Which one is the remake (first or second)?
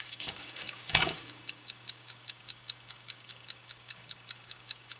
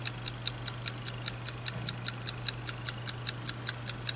first